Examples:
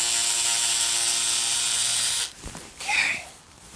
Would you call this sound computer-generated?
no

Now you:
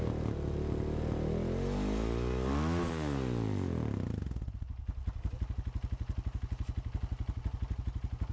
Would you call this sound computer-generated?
no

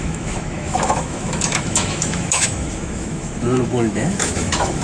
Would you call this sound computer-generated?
yes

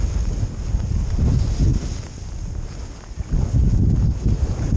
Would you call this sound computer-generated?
no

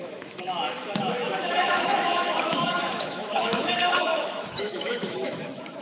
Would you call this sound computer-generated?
yes